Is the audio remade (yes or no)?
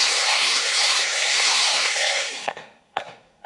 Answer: yes